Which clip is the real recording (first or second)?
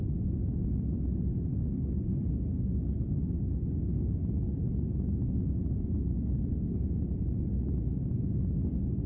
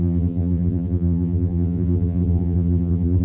first